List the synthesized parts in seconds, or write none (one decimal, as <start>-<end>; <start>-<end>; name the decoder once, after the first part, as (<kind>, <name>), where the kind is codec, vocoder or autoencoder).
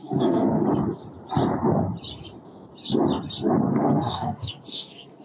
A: 0.0-0.6 (codec, SNAC); 3.7-5.2